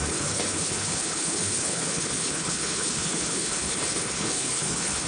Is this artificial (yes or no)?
yes